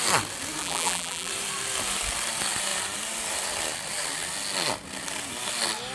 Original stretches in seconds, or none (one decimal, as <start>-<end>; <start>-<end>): 0.0-0.6; 1.3-5.9